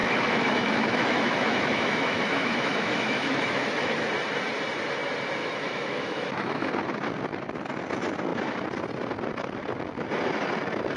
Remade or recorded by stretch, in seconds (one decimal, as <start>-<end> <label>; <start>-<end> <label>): 0.0-4.1 remade; 4.1-5.4 recorded; 5.4-6.7 remade; 6.7-11.0 recorded